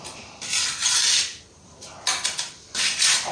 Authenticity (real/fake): real